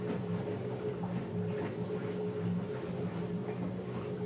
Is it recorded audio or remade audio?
recorded